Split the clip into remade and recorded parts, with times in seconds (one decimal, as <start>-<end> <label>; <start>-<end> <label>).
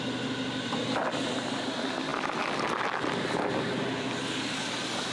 0.0-5.1 recorded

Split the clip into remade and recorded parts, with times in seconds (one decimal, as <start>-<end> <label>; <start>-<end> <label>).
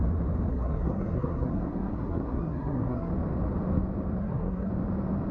0.0-0.5 recorded; 0.5-3.1 remade; 3.1-4.2 recorded; 4.2-4.7 remade; 4.7-5.3 recorded